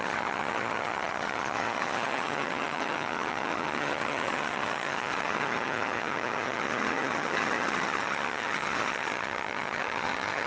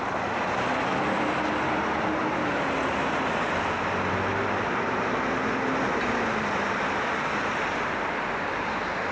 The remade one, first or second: first